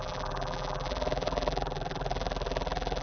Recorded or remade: remade